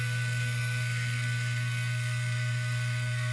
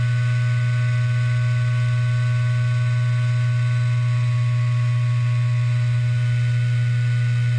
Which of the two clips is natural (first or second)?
second